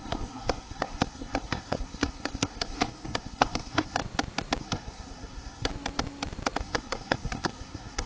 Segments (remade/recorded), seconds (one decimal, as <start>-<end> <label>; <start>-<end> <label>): 0.0-4.0 remade; 4.0-4.6 recorded; 4.6-5.7 remade; 5.7-6.6 recorded; 6.6-8.1 remade